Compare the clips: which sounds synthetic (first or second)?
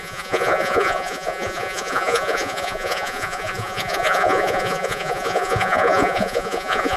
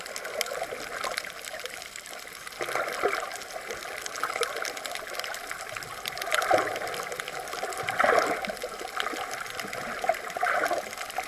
first